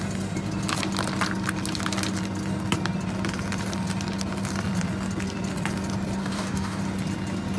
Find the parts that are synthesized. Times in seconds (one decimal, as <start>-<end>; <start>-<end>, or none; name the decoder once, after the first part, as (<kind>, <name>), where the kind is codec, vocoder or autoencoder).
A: 6.2-6.8 (codec, DAC)